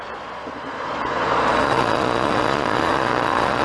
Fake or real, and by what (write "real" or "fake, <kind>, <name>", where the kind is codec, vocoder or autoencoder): fake, vocoder, Vocos